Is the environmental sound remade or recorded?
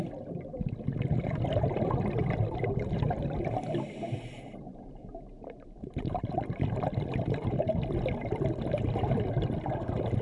remade